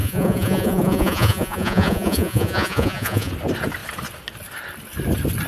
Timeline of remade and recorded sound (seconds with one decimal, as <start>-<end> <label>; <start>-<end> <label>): 0.0-3.3 remade; 3.3-5.5 recorded